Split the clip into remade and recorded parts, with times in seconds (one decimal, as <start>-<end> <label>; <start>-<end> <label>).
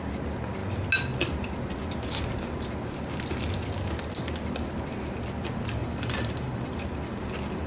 0.0-5.8 recorded; 5.8-6.8 remade; 6.8-7.7 recorded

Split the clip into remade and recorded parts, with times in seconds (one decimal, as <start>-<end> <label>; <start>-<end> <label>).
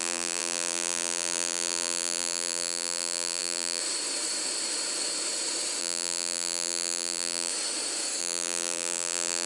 0.0-3.8 remade; 3.8-5.8 recorded; 5.8-7.5 remade; 7.5-8.2 recorded; 8.2-9.5 remade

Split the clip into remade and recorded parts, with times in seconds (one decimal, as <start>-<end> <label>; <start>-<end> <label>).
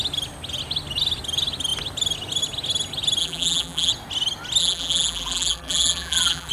0.0-3.2 recorded; 3.2-3.9 remade; 3.9-4.6 recorded; 4.6-6.5 remade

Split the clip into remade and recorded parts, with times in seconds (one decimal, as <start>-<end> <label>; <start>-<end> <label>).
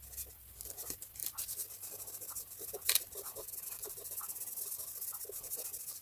0.0-1.2 recorded; 1.2-4.5 remade; 4.5-6.0 recorded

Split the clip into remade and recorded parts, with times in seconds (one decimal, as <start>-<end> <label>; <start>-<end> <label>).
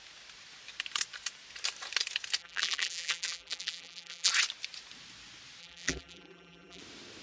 0.0-2.4 recorded; 2.4-4.3 remade; 4.3-5.6 recorded; 5.6-6.8 remade; 6.8-7.2 recorded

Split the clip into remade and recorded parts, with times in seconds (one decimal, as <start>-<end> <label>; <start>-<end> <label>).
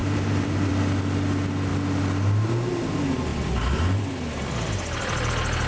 0.0-0.7 remade; 0.7-5.7 recorded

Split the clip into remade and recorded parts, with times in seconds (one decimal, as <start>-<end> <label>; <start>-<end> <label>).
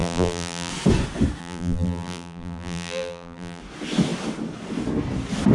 0.0-0.7 remade; 0.7-1.4 recorded; 1.4-3.6 remade; 3.6-5.5 recorded